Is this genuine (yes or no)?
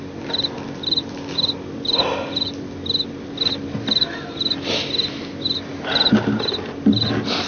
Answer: yes